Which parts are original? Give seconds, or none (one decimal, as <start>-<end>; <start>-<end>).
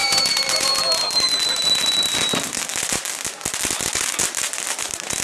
0.7-5.2